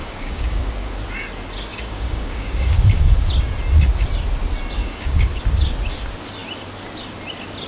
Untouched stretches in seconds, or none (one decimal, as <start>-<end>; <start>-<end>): 0.6-1.7; 3.3-4.8; 5.4-7.7

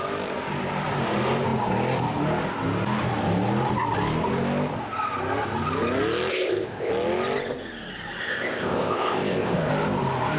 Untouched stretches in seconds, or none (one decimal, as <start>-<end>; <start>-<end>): 0.0-6.3; 6.9-8.2; 9.7-10.4

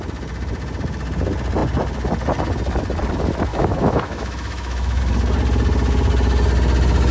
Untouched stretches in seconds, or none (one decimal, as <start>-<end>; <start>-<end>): 0.0-3.5; 5.0-7.1